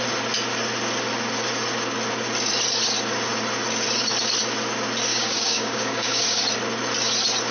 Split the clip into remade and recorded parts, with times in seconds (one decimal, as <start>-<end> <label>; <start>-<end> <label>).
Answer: 0.0-5.1 recorded; 5.1-6.4 remade; 6.4-7.5 recorded